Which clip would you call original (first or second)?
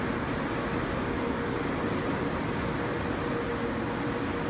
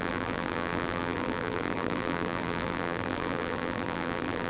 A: first